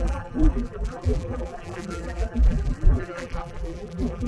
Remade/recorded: remade